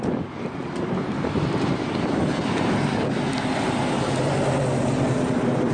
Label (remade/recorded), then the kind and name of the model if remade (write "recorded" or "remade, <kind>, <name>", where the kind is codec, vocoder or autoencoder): recorded